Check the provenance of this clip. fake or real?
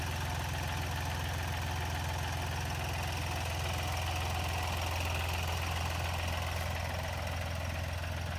real